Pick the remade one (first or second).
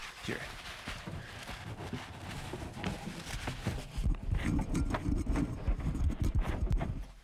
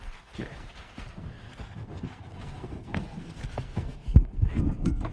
second